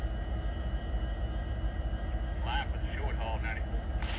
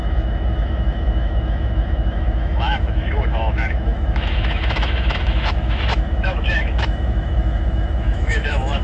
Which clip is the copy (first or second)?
second